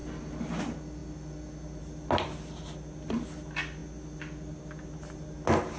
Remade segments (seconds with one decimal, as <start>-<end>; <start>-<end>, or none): none